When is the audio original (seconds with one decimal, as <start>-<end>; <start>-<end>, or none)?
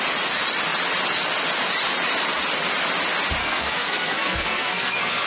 0.0-3.4